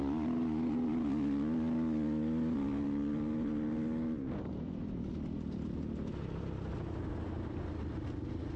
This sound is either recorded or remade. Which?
recorded